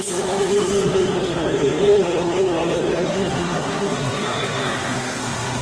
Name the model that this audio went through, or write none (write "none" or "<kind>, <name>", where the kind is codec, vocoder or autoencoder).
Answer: codec, SNAC